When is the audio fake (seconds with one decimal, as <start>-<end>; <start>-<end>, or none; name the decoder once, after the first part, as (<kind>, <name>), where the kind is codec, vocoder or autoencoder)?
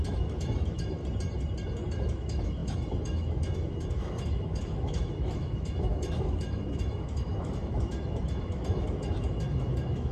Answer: 0.0-1.0 (autoencoder, DAC-VAE); 1.9-10.1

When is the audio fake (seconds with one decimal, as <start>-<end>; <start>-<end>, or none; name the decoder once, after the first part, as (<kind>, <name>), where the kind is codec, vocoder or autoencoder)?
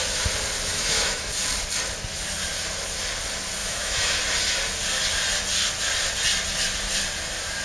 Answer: 0.7-1.3 (autoencoder, DAC-VAE); 3.6-4.2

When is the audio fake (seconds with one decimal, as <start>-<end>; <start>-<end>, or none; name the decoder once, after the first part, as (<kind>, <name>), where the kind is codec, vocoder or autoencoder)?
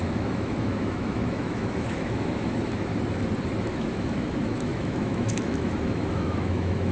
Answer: 0.0-2.9 (autoencoder, DAC-VAE); 3.6-6.9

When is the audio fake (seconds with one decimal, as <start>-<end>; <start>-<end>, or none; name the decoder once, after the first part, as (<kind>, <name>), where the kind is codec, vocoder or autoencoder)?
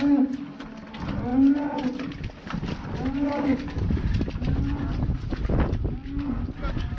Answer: none